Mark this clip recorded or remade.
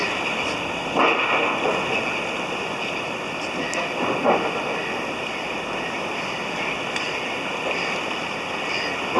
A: recorded